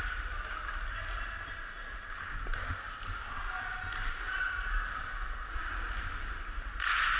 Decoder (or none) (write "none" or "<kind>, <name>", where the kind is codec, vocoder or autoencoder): none